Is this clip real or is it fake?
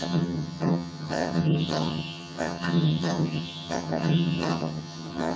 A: fake